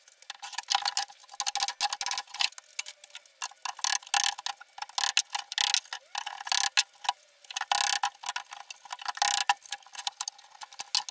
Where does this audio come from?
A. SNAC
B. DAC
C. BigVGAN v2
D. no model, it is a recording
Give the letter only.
D